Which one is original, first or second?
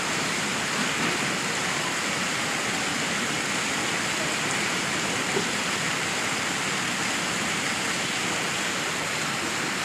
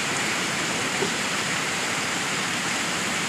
first